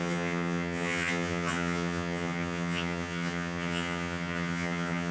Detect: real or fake fake